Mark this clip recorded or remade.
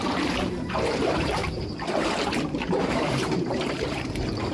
remade